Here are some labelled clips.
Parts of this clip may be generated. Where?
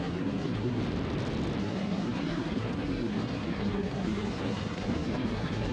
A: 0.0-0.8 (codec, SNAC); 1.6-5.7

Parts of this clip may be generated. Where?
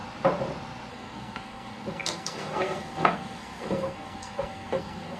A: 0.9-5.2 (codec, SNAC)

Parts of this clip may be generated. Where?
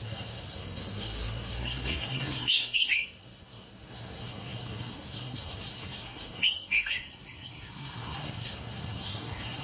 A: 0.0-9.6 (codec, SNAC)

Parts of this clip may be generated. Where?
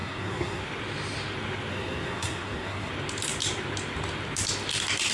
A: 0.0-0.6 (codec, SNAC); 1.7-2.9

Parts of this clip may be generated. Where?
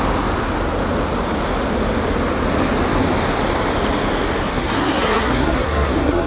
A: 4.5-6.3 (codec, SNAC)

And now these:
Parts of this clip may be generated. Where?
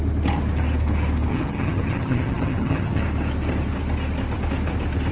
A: 1.3-3.0 (vocoder, HiFi-GAN)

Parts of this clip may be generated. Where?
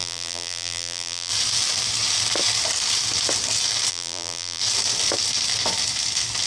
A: 0.0-1.3 (vocoder, BigVGAN v2); 3.9-4.6